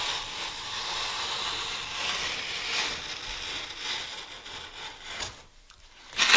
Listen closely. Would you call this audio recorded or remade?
recorded